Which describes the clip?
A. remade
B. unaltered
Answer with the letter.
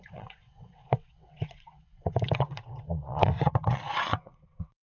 A